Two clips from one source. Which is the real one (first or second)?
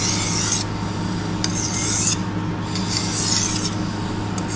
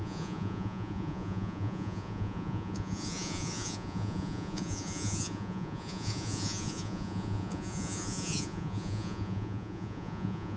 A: first